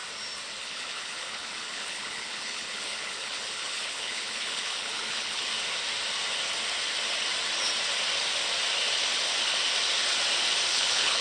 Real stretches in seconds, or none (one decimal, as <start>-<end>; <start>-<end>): 0.0-0.6; 5.5-10.7